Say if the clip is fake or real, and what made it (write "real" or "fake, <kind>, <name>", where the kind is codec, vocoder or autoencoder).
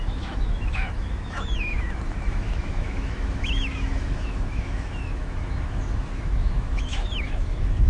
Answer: fake, autoencoder, DAC-VAE